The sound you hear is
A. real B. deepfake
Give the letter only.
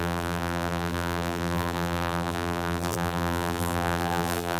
B